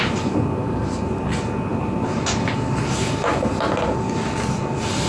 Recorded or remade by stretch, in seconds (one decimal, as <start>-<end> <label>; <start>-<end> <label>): 0.0-5.1 recorded

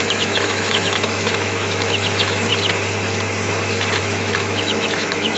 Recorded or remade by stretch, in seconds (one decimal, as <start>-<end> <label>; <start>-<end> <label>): 0.0-2.5 remade; 2.5-4.0 recorded; 4.0-5.4 remade

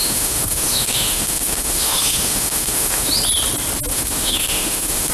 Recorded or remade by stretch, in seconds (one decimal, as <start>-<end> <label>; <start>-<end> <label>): 0.0-3.1 remade; 3.1-3.9 recorded; 3.9-5.1 remade

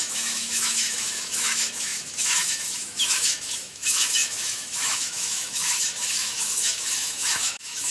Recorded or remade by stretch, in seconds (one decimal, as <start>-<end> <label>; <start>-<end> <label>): 0.0-7.9 remade

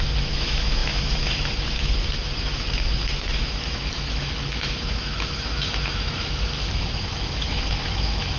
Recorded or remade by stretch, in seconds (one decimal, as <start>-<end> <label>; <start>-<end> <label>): 0.0-8.4 remade